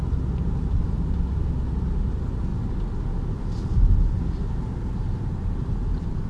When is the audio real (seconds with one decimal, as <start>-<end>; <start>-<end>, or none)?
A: 0.0-6.3